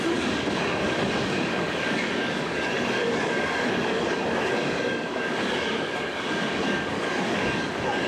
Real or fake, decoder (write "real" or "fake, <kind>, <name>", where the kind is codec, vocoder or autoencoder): fake, codec, DAC